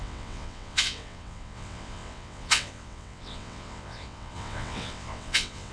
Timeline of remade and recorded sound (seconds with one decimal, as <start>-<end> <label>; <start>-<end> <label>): 0.0-5.7 remade